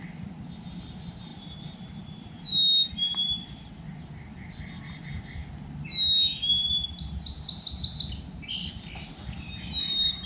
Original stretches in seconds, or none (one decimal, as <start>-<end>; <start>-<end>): 0.0-10.3